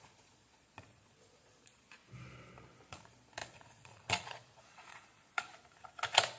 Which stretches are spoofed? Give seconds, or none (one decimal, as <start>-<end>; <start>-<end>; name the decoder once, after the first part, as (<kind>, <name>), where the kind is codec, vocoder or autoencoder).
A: 0.0-2.0 (vocoder, Vocos); 2.9-5.5